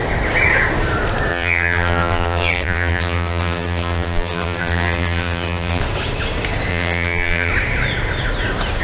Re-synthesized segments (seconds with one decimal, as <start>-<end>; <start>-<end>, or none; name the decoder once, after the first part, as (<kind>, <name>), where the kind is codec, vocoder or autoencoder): 1.3-5.8 (vocoder, BigVGAN v2); 6.7-7.5